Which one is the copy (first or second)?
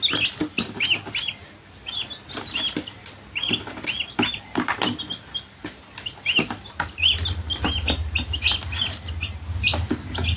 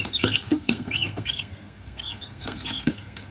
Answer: second